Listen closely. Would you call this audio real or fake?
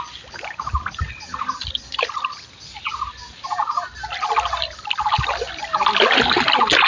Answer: real